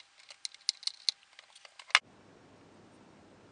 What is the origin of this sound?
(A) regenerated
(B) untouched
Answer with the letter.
B